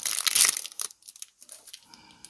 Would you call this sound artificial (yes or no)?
no